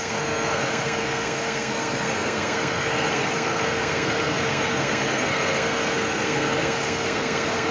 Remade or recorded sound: remade